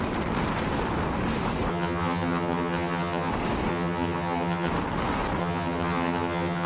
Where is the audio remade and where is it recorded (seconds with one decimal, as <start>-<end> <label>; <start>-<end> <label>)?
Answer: 0.0-1.7 recorded; 1.7-3.3 remade; 3.3-3.7 recorded; 3.7-4.7 remade; 4.7-5.4 recorded; 5.4-6.7 remade